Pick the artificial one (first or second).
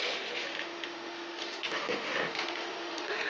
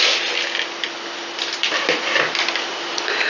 first